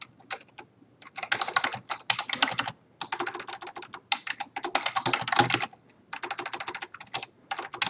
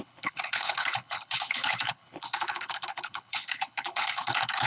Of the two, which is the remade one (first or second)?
second